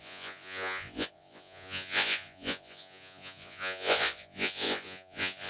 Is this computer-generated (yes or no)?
yes